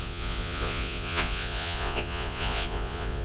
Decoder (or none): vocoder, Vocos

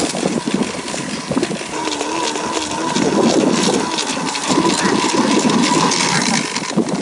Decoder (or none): none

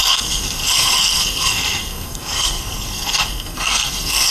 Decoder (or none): codec, SNAC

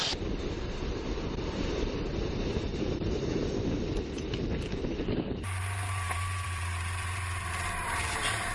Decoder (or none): vocoder, BigVGAN v2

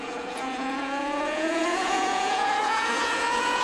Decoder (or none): vocoder, Vocos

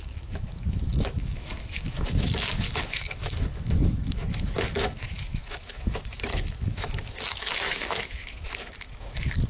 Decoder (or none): autoencoder, DAC-VAE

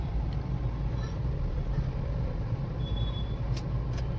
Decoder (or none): none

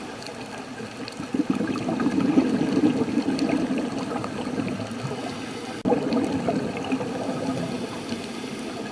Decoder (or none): none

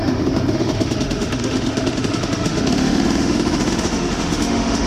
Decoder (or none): autoencoder, DAC-VAE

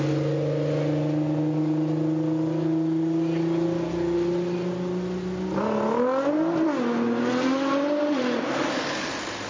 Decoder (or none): none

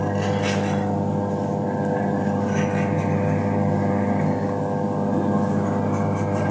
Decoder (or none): none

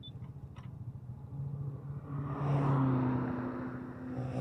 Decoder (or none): none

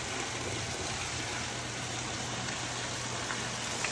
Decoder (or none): none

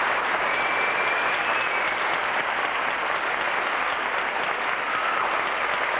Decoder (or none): none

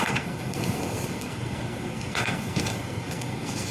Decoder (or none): codec, SNAC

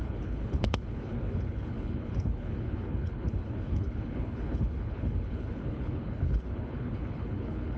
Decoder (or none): codec, HILCodec